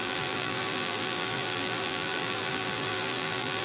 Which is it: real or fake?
fake